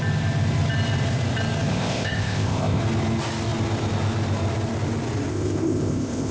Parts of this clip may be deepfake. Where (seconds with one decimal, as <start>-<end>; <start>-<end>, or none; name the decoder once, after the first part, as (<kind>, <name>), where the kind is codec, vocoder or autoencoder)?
1.7-2.8 (codec, ZipCodec); 5.3-6.3